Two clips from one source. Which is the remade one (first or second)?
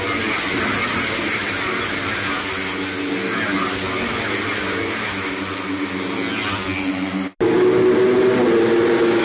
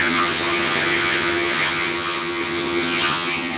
second